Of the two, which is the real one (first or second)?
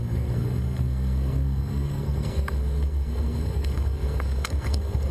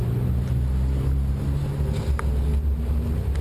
second